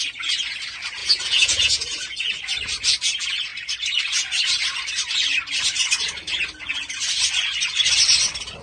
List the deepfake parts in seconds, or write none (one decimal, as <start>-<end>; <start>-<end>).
1.0-2.4